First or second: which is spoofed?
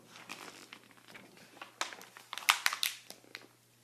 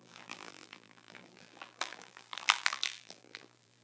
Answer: second